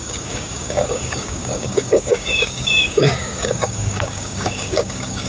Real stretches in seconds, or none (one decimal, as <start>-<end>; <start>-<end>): none